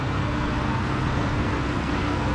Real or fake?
fake